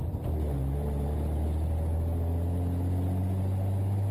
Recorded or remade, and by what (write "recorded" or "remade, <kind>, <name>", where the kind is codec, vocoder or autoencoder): recorded